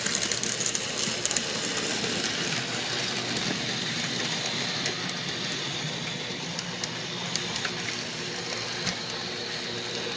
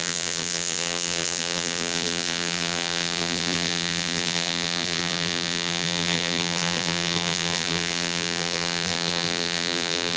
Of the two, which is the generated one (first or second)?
second